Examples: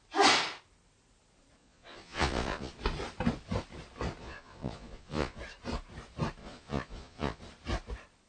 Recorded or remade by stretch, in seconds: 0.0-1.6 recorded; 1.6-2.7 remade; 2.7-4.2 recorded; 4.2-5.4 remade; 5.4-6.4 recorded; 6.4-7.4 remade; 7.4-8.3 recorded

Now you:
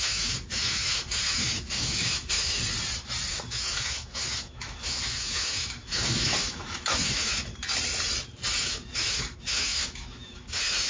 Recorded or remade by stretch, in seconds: 0.0-2.6 remade; 2.6-3.3 recorded; 3.3-7.5 remade; 7.5-8.6 recorded; 8.6-10.9 remade

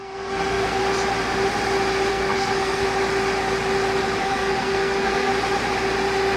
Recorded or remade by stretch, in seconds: 0.0-0.8 remade; 0.8-2.1 recorded; 2.1-2.8 remade; 2.8-4.2 recorded; 4.2-5.3 remade; 5.3-6.4 recorded

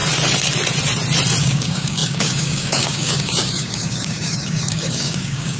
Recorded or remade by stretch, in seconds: 0.0-1.4 recorded; 1.4-5.6 remade

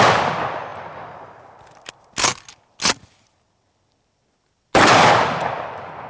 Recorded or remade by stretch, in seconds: 0.0-6.1 recorded

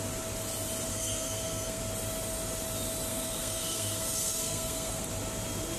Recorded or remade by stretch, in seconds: 0.0-0.9 recorded; 0.9-1.8 remade; 1.8-3.1 recorded; 3.1-5.0 remade; 5.0-5.8 recorded

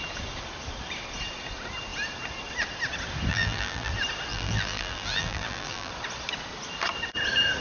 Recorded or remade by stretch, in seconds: 0.0-3.3 recorded; 3.3-3.9 remade; 3.9-4.3 recorded; 4.3-5.9 remade; 5.9-7.6 recorded

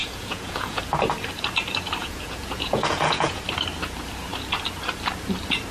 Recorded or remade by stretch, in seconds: 0.0-0.8 remade; 0.8-2.0 recorded; 2.0-3.4 remade; 3.4-5.7 recorded